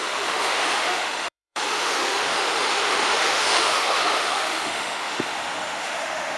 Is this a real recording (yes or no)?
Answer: no